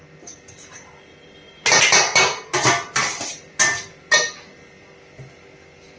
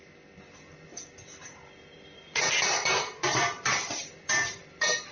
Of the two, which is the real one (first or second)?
first